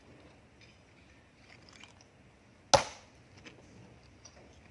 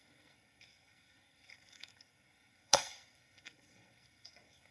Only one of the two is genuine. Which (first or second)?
first